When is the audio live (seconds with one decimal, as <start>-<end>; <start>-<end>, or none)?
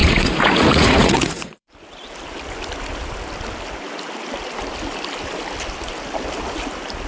1.7-7.1